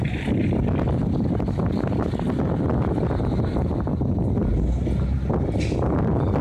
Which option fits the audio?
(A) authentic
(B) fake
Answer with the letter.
A